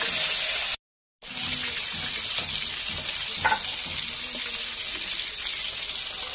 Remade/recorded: recorded